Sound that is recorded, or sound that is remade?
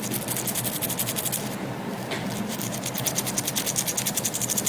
recorded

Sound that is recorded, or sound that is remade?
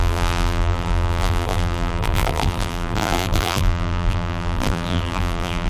remade